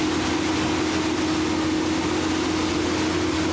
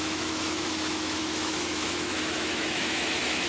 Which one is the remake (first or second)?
second